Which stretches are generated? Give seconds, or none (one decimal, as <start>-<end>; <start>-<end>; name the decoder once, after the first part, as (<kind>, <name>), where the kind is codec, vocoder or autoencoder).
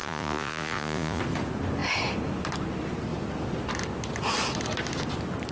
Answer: 0.0-1.2 (vocoder, Vocos)